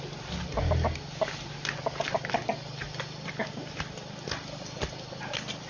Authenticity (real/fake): real